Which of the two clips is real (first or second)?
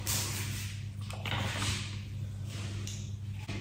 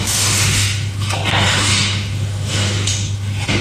first